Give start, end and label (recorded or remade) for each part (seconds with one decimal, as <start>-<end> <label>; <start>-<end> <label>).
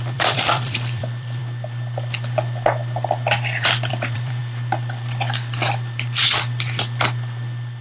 0.0-1.4 remade; 1.4-3.9 recorded; 3.9-4.4 remade; 4.4-7.8 recorded